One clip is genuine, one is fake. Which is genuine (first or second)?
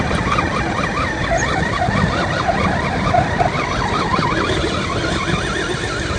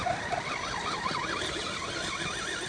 second